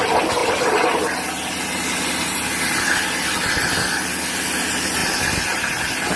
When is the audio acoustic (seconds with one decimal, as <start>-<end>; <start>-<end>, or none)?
0.0-6.2